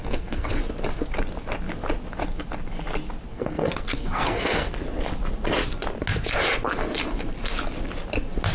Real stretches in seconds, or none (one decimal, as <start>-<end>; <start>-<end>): 0.6-3.3; 4.7-8.5